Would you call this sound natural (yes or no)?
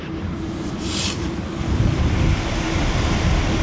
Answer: yes